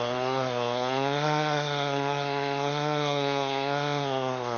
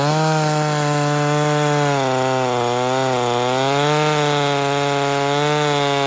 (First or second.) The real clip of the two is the second